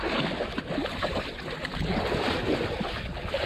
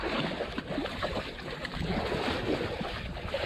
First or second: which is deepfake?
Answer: second